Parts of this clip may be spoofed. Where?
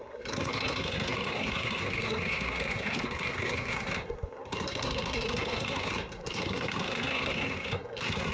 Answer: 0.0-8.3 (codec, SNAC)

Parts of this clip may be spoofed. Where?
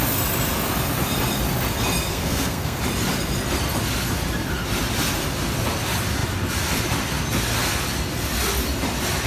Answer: 2.1-2.8 (codec, SNAC)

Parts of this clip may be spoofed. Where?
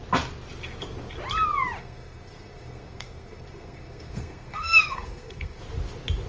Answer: 1.8-5.6 (codec, SNAC)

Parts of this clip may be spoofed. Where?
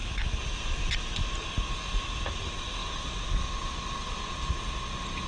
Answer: none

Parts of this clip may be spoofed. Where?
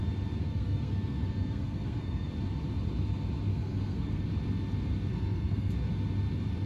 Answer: 0.4-2.3 (codec, SNAC); 3.5-4.3; 5.1-5.7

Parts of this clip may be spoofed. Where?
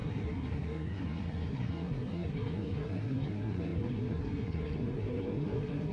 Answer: 0.0-5.9 (codec, SNAC)